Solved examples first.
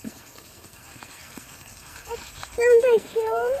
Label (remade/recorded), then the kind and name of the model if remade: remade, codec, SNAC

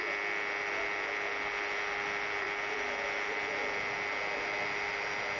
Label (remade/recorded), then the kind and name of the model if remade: recorded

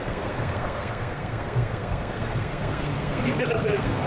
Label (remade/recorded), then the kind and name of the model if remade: remade, codec, SNAC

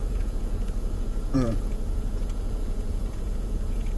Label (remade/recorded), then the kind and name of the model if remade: remade, vocoder, Vocos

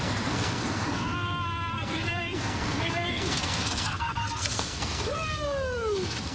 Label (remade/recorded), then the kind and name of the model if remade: remade, codec, SNAC